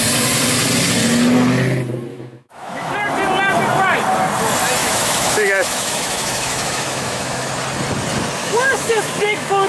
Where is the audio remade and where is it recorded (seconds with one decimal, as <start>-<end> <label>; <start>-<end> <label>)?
0.0-2.1 recorded; 2.1-2.9 remade; 2.9-4.8 recorded; 4.8-7.5 remade; 7.5-8.4 recorded; 8.4-9.7 remade